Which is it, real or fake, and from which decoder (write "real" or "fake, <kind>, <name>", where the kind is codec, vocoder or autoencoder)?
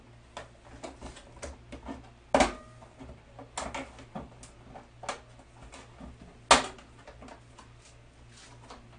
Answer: real